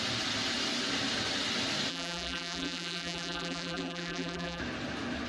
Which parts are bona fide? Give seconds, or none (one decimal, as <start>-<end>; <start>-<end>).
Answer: 0.0-1.9; 4.6-5.3